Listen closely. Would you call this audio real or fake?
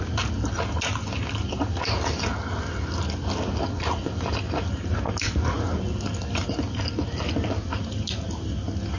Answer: real